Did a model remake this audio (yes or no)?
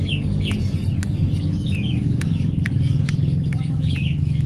yes